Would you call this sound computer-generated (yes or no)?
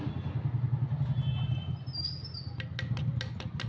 no